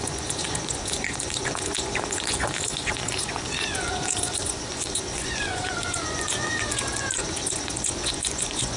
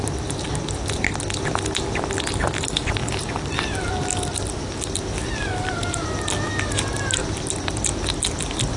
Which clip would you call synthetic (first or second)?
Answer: first